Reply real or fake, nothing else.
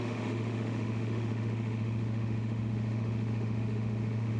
fake